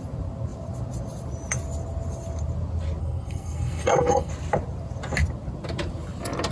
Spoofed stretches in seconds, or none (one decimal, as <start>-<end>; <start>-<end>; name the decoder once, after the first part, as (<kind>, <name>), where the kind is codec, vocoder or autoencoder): 3.0-4.3 (codec, SNAC)